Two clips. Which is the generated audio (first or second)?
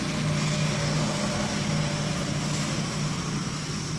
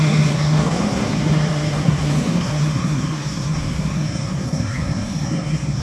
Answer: second